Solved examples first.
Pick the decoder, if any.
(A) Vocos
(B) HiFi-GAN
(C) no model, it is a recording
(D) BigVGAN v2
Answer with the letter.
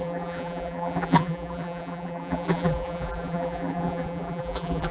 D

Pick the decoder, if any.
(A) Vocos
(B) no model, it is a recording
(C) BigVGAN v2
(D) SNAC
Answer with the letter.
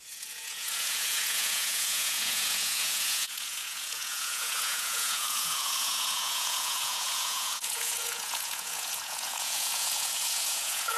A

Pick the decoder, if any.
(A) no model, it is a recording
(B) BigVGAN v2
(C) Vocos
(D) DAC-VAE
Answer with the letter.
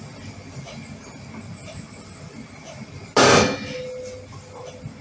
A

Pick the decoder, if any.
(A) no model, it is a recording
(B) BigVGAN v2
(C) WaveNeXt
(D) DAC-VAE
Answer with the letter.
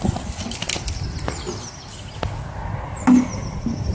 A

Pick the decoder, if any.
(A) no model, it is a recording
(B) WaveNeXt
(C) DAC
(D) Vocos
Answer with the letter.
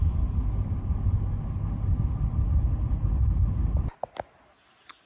A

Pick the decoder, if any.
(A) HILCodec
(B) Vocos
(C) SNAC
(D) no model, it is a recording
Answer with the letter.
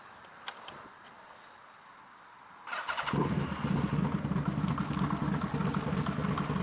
D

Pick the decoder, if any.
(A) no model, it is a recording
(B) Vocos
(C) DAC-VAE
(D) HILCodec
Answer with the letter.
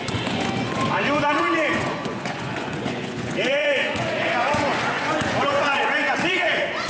B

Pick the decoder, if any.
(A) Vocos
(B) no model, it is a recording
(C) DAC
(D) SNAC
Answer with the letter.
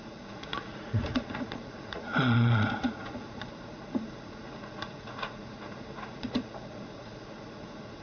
A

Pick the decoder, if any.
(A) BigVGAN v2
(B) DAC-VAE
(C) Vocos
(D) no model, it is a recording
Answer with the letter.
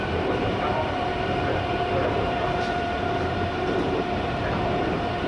A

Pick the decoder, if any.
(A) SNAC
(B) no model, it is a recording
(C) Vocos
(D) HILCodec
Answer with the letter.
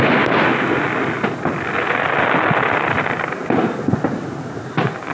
B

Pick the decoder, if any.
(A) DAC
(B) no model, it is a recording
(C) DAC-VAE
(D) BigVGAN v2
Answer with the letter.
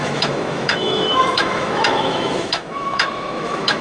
C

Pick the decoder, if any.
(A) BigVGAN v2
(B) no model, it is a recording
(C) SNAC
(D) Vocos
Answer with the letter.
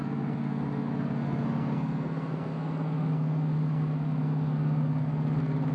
C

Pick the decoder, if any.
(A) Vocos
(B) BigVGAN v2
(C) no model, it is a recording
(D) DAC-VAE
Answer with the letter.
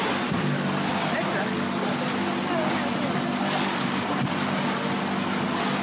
C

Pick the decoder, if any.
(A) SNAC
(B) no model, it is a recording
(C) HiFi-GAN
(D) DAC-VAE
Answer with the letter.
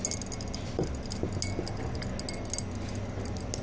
B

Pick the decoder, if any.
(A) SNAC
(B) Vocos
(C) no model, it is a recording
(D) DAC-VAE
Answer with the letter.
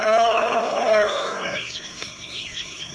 A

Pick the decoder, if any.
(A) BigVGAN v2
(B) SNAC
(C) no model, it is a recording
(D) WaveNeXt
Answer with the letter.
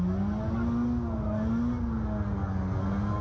C